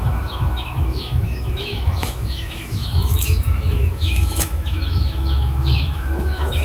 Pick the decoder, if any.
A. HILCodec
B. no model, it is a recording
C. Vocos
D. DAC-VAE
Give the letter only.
D